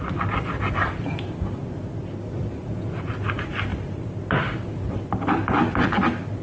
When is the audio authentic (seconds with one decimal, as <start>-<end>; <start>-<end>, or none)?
0.0-2.6; 3.1-6.4